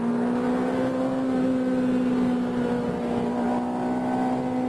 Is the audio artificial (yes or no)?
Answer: no